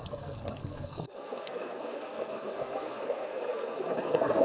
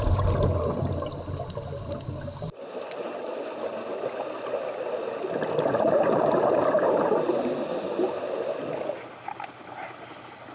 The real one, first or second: second